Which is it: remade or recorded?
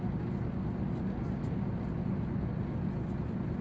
recorded